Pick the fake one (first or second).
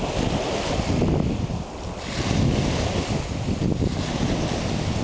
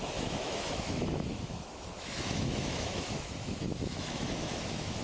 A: second